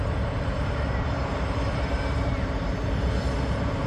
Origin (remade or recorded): remade